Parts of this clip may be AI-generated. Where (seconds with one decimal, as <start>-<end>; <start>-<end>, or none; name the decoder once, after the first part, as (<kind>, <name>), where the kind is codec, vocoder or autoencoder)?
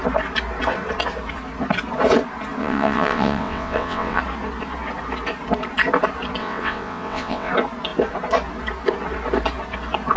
2.6-4.2 (vocoder, WaveNeXt); 6.4-7.5